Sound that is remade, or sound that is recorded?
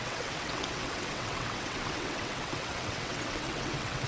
remade